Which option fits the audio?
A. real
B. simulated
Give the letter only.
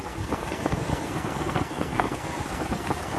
B